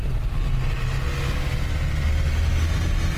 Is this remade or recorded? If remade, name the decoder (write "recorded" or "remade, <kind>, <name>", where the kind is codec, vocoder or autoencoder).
recorded